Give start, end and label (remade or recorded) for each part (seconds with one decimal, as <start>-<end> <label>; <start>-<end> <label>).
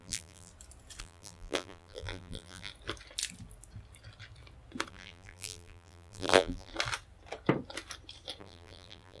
0.0-0.5 remade; 0.5-1.0 recorded; 1.0-2.7 remade; 2.7-4.9 recorded; 4.9-6.7 remade; 6.7-8.4 recorded; 8.4-9.2 remade